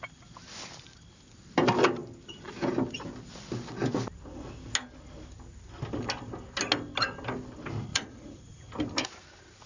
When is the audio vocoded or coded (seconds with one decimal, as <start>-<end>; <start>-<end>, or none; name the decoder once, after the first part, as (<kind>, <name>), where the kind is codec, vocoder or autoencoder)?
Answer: 7.9-8.7 (vocoder, Vocos)